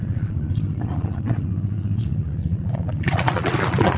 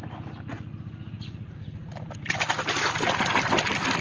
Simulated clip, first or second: first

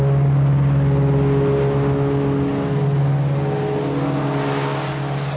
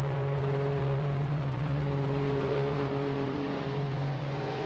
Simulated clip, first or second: second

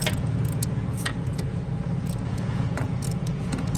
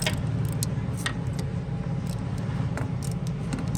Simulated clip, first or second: first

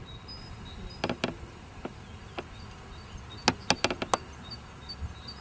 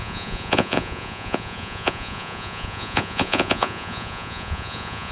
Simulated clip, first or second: second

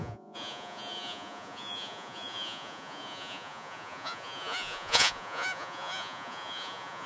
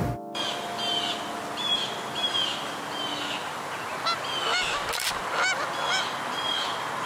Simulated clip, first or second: first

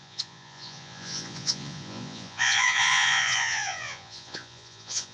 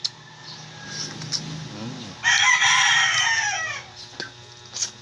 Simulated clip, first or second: first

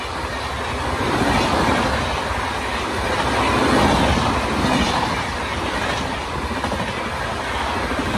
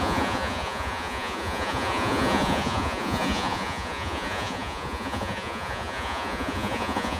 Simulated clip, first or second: second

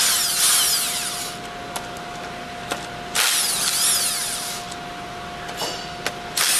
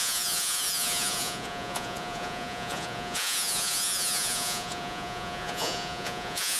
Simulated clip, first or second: second